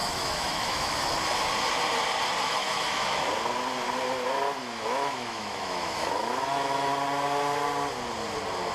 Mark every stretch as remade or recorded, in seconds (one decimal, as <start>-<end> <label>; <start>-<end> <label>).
0.0-1.0 remade; 1.0-2.6 recorded; 2.6-3.2 remade; 3.2-4.6 recorded; 4.6-6.9 remade; 6.9-8.7 recorded